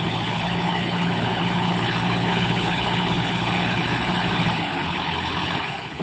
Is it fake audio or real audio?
fake